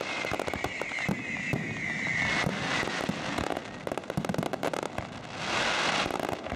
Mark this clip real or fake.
real